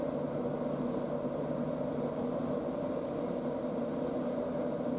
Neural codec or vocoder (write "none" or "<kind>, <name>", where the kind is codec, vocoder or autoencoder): none